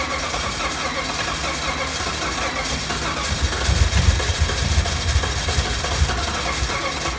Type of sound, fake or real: real